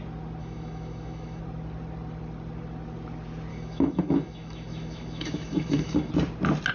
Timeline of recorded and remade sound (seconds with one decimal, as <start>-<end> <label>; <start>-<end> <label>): 0.0-0.4 recorded; 0.4-1.4 remade; 1.4-3.5 recorded; 3.5-6.1 remade; 6.1-6.7 recorded